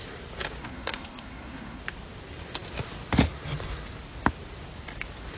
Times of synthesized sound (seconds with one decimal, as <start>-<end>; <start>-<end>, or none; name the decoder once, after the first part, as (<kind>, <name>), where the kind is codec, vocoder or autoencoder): 0.6-1.8 (codec, SNAC)